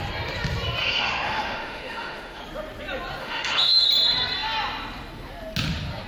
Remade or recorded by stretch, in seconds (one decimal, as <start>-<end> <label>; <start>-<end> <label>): 0.0-0.8 recorded; 0.8-2.4 remade; 2.4-3.2 recorded; 3.2-3.9 remade; 3.9-6.1 recorded